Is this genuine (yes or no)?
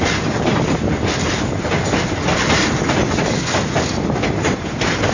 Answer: yes